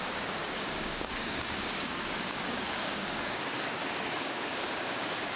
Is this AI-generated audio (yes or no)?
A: yes